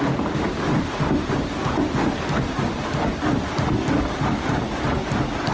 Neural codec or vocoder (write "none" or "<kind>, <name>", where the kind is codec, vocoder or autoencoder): none